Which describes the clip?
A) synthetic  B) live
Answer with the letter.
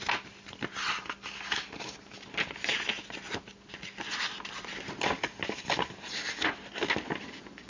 B